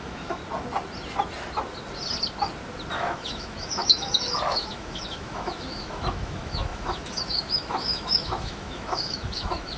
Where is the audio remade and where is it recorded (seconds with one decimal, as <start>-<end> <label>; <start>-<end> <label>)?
0.0-0.4 remade; 0.4-2.9 recorded; 2.9-9.8 remade